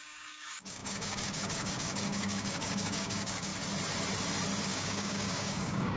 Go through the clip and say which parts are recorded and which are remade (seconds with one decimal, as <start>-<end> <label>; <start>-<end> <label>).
0.0-3.5 remade; 3.5-4.6 recorded; 4.6-6.0 remade